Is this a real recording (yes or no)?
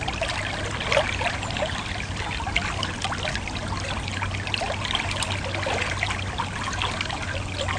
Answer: yes